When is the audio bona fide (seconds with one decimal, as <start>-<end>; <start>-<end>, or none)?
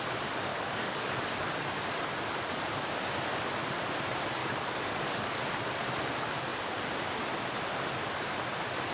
0.0-0.5; 1.5-4.4; 5.4-8.9